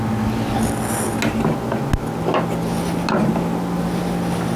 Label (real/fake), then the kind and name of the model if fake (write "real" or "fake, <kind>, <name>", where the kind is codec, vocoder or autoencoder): real